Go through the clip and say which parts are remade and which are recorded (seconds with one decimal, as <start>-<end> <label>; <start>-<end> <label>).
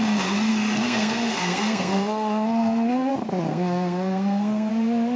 0.0-0.5 recorded; 0.5-3.1 remade; 3.1-3.5 recorded; 3.5-4.7 remade; 4.7-5.2 recorded